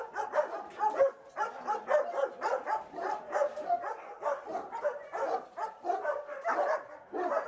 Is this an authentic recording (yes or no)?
yes